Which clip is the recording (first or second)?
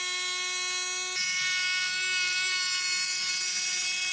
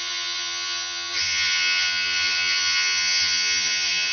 first